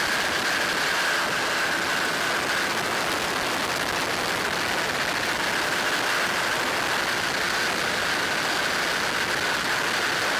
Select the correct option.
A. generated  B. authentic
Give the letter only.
B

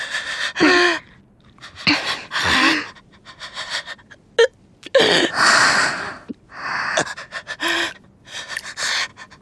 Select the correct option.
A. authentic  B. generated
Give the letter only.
A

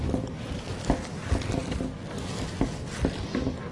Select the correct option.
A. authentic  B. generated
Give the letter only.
A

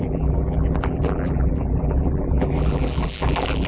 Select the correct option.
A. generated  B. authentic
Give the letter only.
A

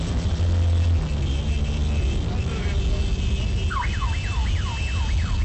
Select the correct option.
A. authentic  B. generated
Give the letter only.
A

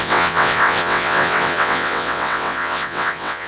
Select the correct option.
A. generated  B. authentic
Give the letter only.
A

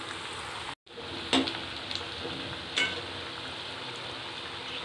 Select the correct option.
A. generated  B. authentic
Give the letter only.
B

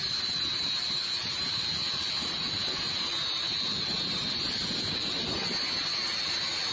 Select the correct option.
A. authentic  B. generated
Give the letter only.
A